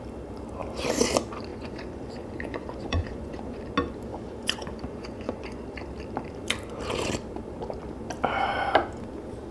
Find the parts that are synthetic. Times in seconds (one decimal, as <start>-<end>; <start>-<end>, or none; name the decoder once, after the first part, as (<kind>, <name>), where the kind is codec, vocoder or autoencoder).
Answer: 1.5-3.6 (vocoder, Vocos); 4.1-5.6